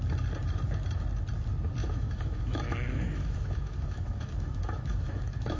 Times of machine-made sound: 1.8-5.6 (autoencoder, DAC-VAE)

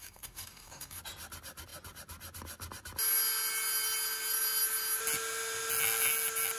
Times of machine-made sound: 0.0-1.0 (codec, DAC)